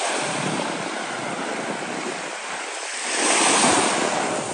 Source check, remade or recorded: recorded